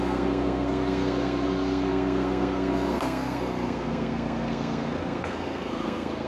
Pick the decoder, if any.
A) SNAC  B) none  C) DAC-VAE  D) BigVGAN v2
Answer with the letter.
A